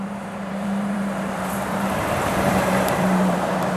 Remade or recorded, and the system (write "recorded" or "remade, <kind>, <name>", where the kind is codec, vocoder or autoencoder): remade, vocoder, BigVGAN v2